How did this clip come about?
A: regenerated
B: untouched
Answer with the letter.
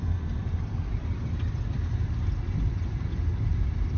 A